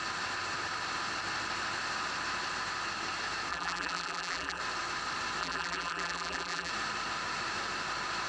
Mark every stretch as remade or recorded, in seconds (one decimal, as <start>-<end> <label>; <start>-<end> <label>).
0.0-3.5 recorded; 3.5-4.6 remade; 4.6-5.4 recorded; 5.4-6.7 remade; 6.7-8.3 recorded